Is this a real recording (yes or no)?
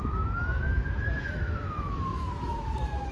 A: no